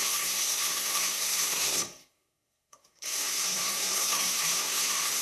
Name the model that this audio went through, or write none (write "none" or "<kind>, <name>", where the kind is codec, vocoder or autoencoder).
codec, SNAC